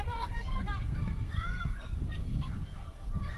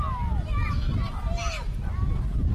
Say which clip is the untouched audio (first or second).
second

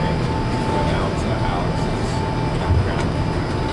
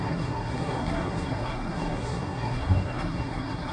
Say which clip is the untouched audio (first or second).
first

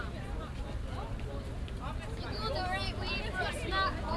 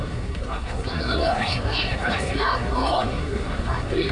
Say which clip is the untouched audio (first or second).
first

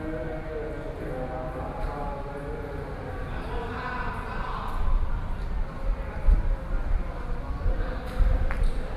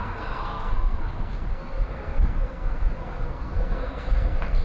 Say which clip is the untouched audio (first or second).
first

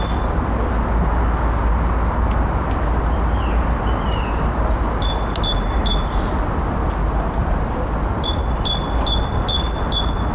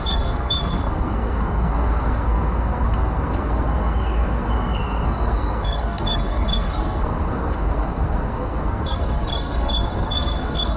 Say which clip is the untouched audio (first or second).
first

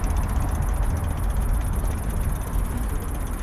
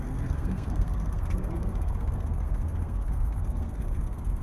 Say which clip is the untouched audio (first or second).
first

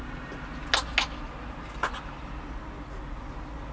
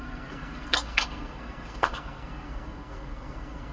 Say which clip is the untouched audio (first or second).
first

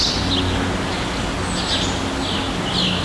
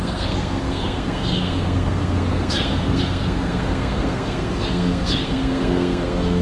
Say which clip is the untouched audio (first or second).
first